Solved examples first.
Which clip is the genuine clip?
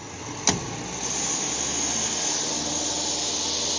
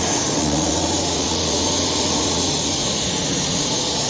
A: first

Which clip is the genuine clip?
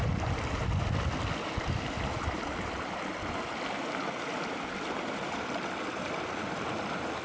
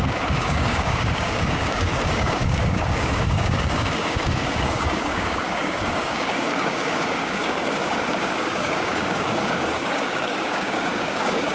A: first